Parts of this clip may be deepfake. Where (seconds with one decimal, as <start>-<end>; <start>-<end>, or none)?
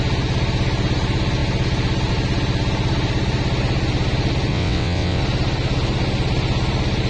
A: 4.5-5.2